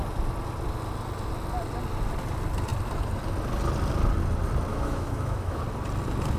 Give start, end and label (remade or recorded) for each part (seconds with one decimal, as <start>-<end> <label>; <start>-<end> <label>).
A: 0.0-4.7 recorded; 4.7-5.6 remade; 5.6-6.4 recorded